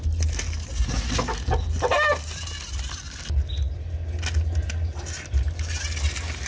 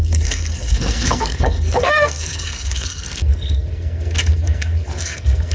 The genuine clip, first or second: first